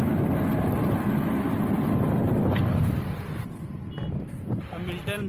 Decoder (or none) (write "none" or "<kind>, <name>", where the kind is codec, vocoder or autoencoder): none